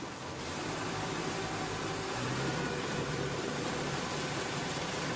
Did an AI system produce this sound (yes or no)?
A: yes